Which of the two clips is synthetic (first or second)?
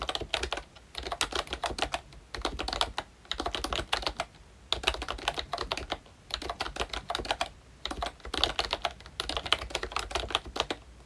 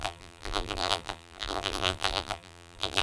second